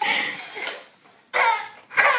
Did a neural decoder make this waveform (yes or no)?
no